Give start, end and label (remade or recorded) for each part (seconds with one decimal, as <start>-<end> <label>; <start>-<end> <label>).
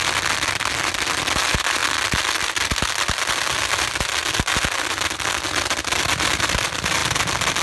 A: 0.0-7.6 recorded